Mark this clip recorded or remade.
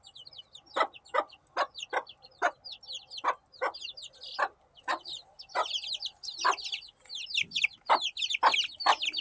recorded